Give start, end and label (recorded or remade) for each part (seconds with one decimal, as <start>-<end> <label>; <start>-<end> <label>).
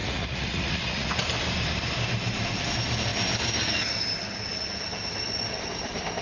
0.0-1.1 remade; 1.1-6.2 recorded